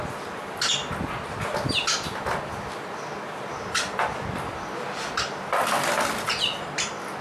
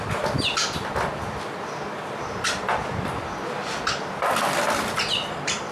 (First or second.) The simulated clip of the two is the second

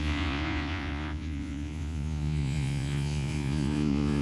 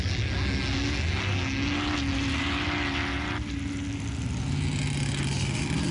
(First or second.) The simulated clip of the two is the first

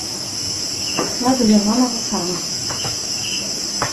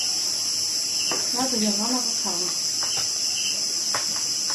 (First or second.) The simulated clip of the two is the first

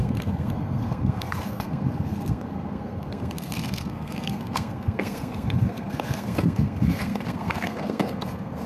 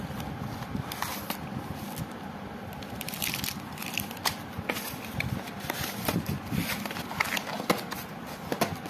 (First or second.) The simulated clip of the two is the first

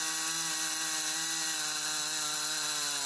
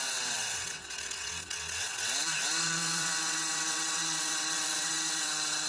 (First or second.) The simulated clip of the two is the second